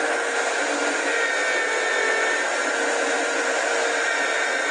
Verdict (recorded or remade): recorded